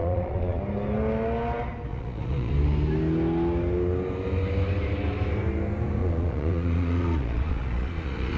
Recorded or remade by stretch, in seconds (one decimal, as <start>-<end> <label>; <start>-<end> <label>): 0.0-0.6 remade; 0.6-1.9 recorded; 1.9-2.5 remade; 2.5-6.0 recorded; 6.0-8.4 remade